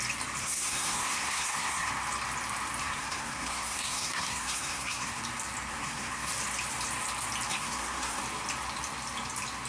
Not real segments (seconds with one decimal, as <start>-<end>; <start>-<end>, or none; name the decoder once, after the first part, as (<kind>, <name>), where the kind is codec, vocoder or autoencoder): 0.4-1.9 (codec, SNAC); 2.8-5.2; 5.7-6.3; 7.5-8.2